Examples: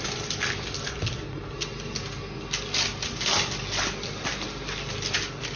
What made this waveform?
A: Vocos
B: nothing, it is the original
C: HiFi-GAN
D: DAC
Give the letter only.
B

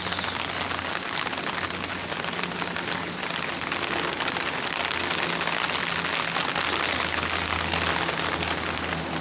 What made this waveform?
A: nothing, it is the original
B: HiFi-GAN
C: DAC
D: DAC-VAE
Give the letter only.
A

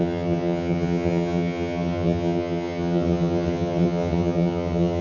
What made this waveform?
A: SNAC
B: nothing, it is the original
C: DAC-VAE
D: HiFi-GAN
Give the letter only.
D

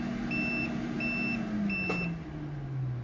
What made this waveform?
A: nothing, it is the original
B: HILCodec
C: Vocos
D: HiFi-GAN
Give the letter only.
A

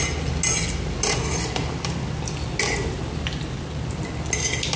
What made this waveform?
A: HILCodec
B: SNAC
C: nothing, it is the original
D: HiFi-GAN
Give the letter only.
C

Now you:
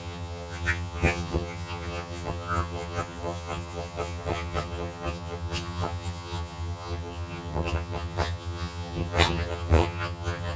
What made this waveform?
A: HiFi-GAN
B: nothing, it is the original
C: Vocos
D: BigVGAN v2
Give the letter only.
A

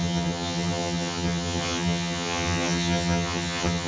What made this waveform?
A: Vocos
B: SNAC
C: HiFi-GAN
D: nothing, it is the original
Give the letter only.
C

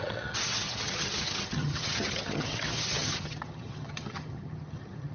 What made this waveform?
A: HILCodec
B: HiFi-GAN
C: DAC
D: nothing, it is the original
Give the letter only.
B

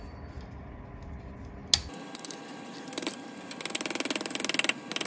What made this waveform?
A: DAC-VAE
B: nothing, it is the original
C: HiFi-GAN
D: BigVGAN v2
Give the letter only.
B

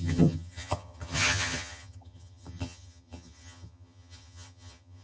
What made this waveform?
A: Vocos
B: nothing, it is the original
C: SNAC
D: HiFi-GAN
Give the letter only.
D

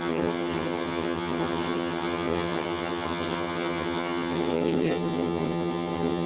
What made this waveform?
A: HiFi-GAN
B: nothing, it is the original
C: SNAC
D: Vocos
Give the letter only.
A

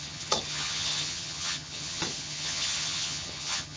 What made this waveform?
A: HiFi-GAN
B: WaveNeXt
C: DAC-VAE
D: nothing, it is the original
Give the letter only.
A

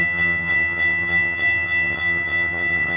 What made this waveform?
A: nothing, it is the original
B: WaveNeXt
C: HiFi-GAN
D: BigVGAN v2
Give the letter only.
C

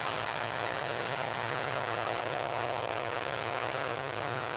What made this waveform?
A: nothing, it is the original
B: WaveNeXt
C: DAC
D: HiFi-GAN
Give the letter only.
D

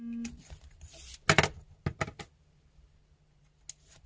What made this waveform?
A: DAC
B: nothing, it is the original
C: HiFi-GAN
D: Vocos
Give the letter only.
B